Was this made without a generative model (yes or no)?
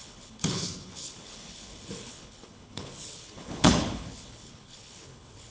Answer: no